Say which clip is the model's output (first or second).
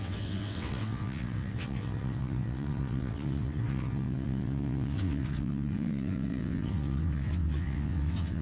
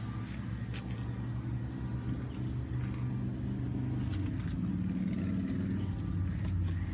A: first